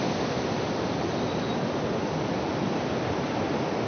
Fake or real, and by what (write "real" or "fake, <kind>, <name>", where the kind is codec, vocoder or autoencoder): real